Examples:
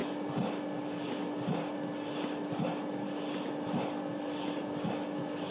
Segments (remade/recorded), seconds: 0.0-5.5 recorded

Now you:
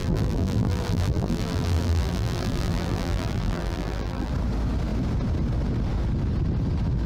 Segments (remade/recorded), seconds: 0.0-4.3 remade; 4.3-7.1 recorded

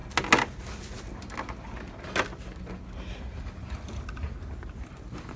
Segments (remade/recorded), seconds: 0.0-5.4 recorded

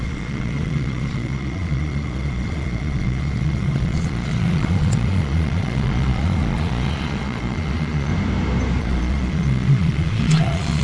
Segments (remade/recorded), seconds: 0.0-8.1 remade; 8.1-8.8 recorded; 8.8-10.8 remade

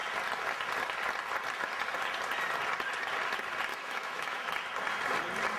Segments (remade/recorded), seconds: 0.0-3.7 recorded; 3.7-4.5 remade; 4.5-5.6 recorded

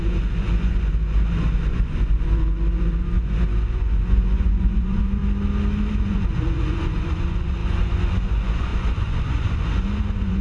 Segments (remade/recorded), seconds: 0.0-5.2 remade; 5.2-6.0 recorded; 6.0-10.4 remade

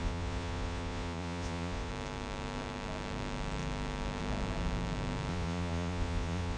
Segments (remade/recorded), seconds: 0.0-1.9 remade; 1.9-5.3 recorded; 5.3-6.6 remade